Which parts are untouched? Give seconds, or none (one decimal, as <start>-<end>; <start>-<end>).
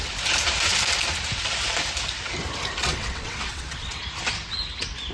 0.0-2.8; 4.0-5.1